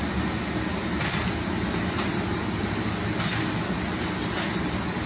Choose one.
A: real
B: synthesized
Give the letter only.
A